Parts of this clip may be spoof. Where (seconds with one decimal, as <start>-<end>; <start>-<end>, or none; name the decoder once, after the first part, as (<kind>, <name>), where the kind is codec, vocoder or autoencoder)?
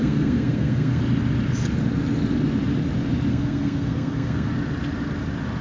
0.0-1.0 (codec, SNAC); 3.3-4.5